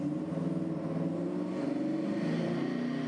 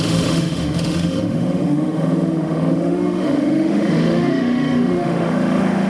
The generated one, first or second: second